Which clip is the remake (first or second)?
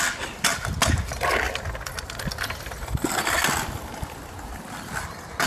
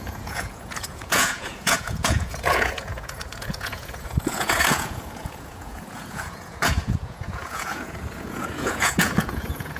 second